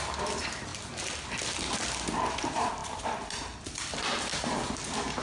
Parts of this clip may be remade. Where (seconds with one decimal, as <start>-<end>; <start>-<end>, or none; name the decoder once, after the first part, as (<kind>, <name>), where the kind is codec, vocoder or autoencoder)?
0.0-0.7 (vocoder, BigVGAN v2); 2.3-5.2